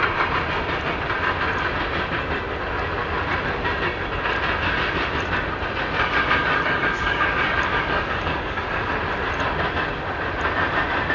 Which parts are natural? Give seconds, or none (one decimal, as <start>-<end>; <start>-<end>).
0.0-6.4; 8.9-11.1